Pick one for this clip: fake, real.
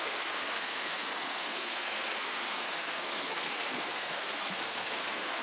fake